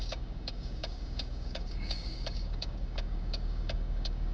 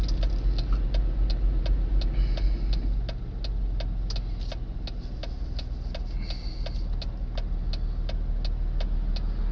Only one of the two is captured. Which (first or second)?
second